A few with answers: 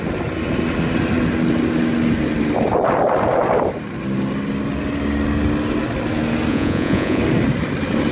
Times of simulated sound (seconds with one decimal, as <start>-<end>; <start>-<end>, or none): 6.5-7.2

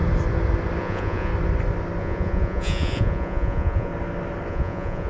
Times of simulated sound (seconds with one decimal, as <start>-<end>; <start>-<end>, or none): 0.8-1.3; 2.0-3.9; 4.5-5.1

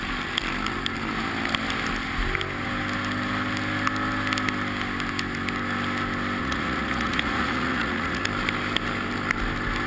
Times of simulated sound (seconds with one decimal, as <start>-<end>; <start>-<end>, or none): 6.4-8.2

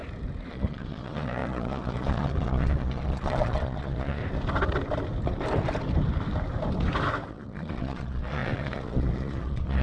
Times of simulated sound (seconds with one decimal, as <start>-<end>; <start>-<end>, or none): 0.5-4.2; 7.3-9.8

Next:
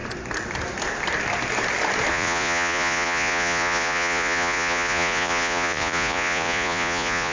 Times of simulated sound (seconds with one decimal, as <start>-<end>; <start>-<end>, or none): 2.1-7.3

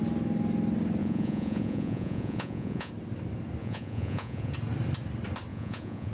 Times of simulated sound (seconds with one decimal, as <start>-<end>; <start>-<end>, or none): 1.0-2.9; 3.6-4.5; 5.5-6.1